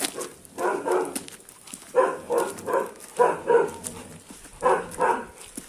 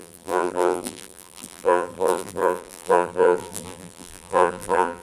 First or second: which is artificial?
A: second